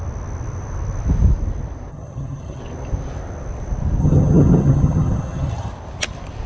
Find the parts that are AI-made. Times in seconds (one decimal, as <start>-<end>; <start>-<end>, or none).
1.9-2.6; 4.0-5.7